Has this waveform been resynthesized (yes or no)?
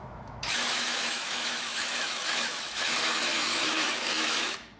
yes